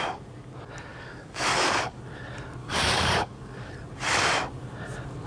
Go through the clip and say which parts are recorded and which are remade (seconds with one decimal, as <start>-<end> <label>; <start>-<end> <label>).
0.0-0.9 recorded; 0.9-2.0 remade; 2.0-2.6 recorded; 2.6-3.7 remade; 3.7-5.3 recorded